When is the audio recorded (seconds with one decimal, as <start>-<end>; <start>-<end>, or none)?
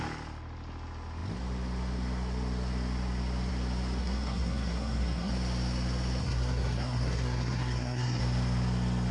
0.0-4.0; 5.3-6.2; 8.2-9.1